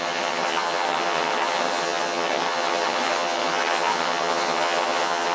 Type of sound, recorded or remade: remade